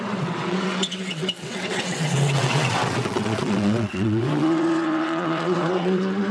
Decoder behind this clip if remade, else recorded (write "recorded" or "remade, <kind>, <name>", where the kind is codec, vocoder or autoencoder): remade, vocoder, WaveNeXt